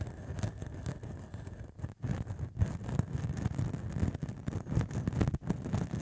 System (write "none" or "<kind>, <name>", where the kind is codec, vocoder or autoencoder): none